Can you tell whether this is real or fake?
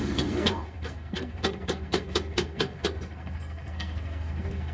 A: fake